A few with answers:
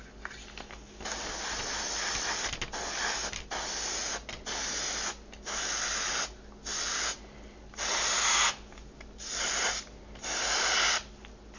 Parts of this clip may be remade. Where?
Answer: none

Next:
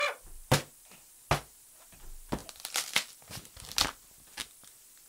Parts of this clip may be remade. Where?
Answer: none

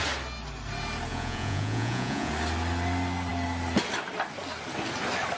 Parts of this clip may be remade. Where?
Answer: 1.1-2.3 (vocoder, Vocos)

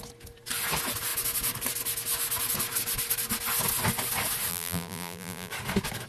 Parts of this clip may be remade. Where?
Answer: 4.5-5.5 (vocoder, BigVGAN v2)

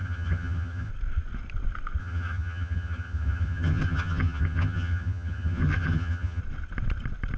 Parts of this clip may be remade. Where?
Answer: 0.0-0.9 (vocoder, HiFi-GAN); 2.0-6.4

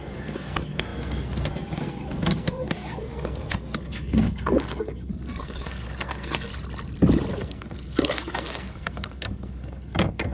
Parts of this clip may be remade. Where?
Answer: 0.0-6.5 (codec, SNAC); 7.3-10.3

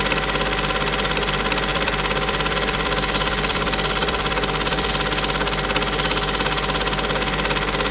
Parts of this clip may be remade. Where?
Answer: 1.7-4.9 (vocoder, BigVGAN v2)